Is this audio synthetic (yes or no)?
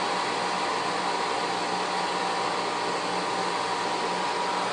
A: no